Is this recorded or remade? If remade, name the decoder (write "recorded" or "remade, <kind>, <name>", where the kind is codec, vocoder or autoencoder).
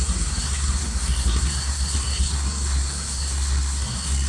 remade, codec, SNAC